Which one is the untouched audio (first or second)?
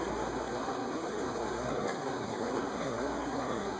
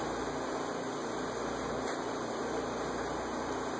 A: second